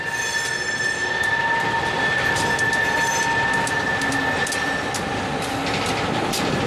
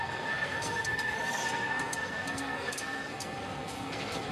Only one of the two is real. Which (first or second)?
first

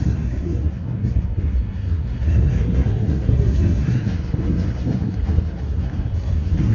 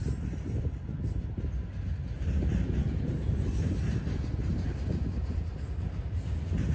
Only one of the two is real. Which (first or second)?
second